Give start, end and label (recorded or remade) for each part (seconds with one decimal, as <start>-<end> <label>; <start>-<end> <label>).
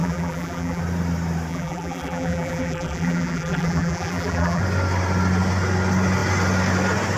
0.0-0.8 remade; 0.8-1.5 recorded; 1.5-4.6 remade; 4.6-7.2 recorded